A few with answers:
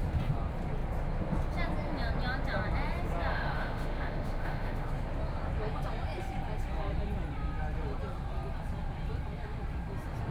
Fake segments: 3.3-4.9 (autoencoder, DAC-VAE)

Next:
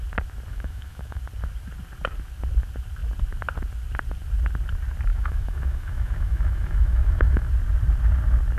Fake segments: 0.5-1.2 (autoencoder, DAC-VAE); 5.1-7.5

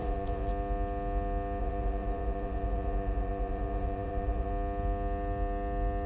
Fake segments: 0.0-0.5 (vocoder, Vocos); 1.6-4.5

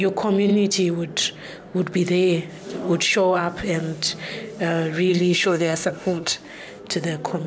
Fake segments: 5.1-6.4 (codec, SNAC)

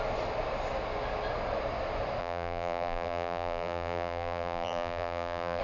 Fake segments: 2.2-5.6 (vocoder, BigVGAN v2)

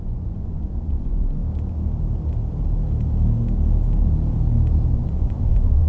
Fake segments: 0.0-1.4 (vocoder, Vocos); 4.9-5.9

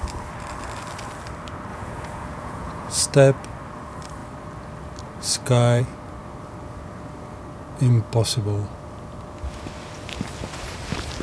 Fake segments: 1.7-3.0 (vocoder, Vocos)

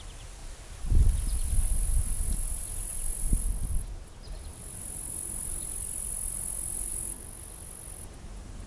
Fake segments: none